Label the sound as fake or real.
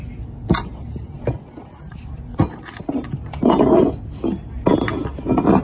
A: real